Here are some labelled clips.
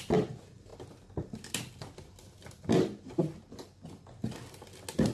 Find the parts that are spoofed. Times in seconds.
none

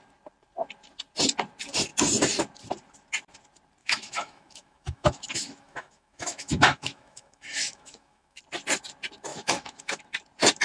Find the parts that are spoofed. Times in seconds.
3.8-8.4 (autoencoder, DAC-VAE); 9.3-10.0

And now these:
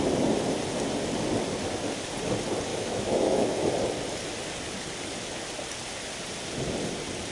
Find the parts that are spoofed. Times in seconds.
2.7-3.7 (autoencoder, DAC-VAE)

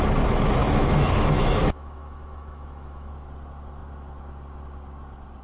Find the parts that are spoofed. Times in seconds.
0.6-3.1 (autoencoder, DAC-VAE)